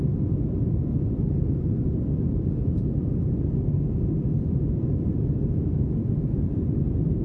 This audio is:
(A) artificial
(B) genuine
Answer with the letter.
B